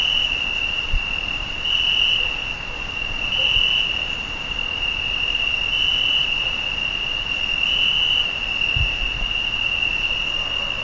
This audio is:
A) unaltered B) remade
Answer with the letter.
A